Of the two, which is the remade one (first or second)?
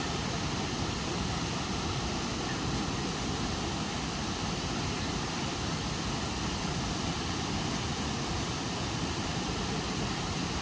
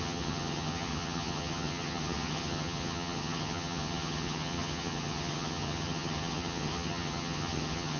second